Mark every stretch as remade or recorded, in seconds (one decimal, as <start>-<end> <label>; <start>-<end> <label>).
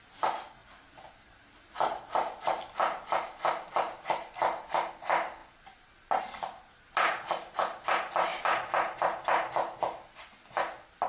0.0-0.6 recorded; 0.6-4.9 remade; 4.9-11.1 recorded